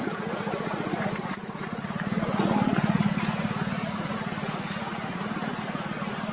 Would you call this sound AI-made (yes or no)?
yes